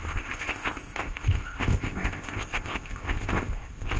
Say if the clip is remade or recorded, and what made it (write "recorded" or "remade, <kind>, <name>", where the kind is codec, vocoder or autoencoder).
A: remade, codec, ZipCodec